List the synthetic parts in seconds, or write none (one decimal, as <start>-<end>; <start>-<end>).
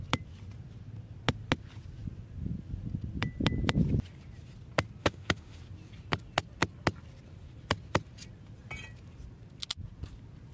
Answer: 5.0-5.6